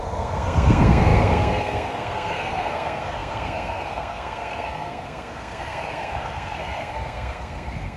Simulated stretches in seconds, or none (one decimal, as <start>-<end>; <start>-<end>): 0.0-8.0